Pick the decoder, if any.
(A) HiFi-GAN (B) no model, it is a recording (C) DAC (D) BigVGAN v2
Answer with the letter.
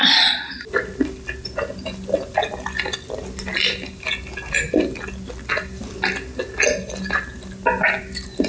B